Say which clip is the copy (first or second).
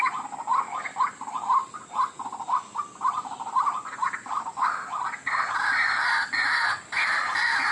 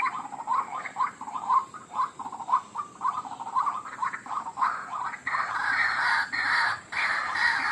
second